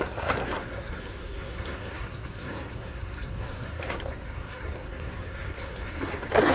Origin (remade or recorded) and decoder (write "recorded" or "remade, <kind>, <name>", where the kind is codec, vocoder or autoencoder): remade, codec, SNAC